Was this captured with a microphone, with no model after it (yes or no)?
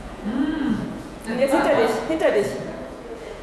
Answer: no